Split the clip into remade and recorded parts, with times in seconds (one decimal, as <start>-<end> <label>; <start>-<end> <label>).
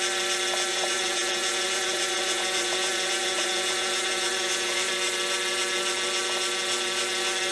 0.0-0.7 recorded; 0.7-4.9 remade; 4.9-7.5 recorded